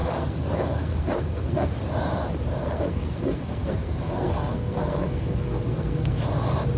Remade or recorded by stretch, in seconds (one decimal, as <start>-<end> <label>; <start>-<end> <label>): 0.0-1.7 remade; 1.7-2.6 recorded; 2.6-6.2 remade; 6.2-6.8 recorded